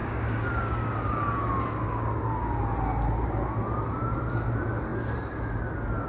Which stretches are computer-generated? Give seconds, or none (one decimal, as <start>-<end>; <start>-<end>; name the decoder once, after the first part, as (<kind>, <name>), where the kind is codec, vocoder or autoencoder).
0.0-2.6 (codec, DAC)